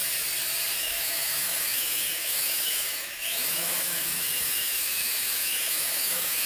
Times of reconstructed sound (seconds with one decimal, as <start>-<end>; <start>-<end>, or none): 0.8-6.5